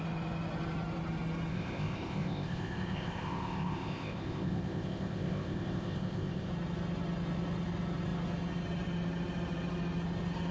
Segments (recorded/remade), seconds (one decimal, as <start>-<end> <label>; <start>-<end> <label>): 0.0-1.5 recorded; 1.5-6.5 remade; 6.5-10.5 recorded